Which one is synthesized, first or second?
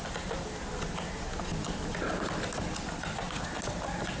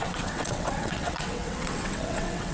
second